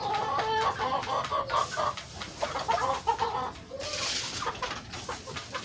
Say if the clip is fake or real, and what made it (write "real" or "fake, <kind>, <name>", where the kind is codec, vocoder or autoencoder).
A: real